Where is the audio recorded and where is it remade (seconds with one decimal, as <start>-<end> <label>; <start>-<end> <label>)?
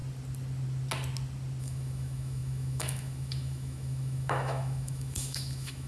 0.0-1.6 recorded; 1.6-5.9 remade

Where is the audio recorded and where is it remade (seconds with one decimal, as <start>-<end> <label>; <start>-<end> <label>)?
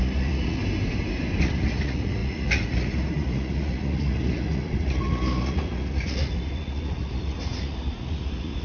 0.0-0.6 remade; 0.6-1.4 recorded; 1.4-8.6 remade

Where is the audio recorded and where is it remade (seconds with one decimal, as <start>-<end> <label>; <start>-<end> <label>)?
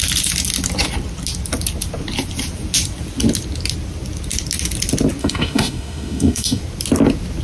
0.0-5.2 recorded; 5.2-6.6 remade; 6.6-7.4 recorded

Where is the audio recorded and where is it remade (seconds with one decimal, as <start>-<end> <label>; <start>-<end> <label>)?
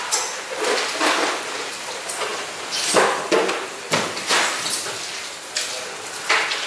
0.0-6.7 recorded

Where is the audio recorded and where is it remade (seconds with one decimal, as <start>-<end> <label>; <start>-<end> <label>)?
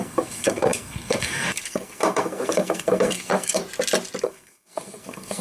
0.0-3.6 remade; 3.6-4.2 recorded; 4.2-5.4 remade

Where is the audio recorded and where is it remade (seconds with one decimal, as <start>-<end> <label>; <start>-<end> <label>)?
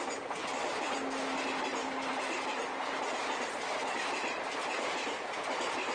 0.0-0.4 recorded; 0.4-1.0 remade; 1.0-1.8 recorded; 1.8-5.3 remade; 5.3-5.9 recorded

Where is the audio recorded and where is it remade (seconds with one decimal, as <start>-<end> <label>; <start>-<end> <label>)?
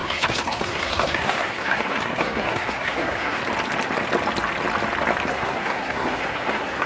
0.0-3.4 remade; 3.4-5.3 recorded; 5.3-6.9 remade